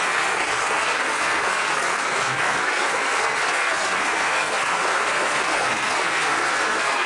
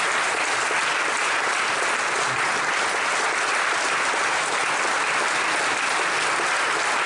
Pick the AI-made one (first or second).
first